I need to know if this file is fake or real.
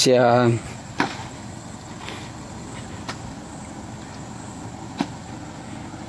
real